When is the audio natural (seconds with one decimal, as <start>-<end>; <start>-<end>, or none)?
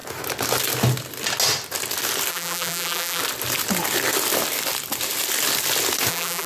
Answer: 0.0-2.3; 3.2-6.1